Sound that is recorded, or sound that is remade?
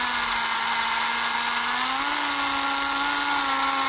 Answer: recorded